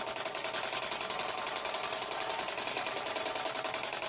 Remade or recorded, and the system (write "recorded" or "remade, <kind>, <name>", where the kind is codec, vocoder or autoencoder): recorded